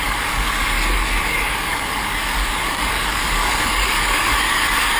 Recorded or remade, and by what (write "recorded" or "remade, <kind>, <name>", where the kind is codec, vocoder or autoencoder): remade, codec, DAC